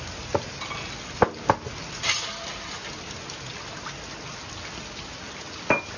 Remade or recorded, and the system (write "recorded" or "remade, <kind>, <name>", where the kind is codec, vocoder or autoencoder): recorded